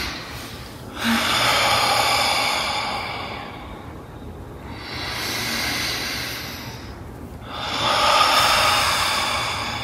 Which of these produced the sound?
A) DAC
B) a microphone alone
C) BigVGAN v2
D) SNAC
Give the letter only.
B